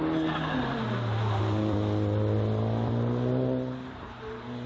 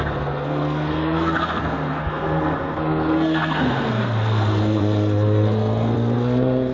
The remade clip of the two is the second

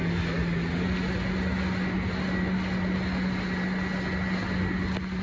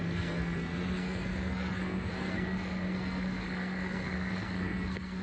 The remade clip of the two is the second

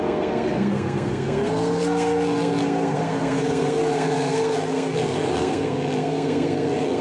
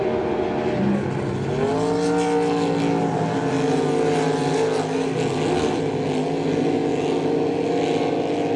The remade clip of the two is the first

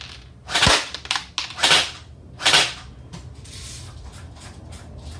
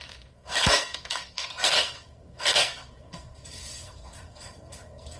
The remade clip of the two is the second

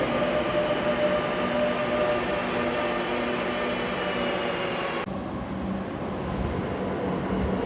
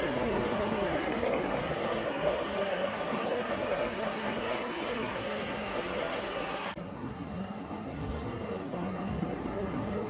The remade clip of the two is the second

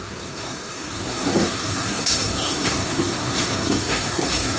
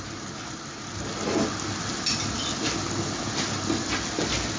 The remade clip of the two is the first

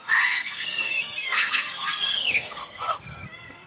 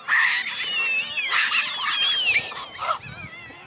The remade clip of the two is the first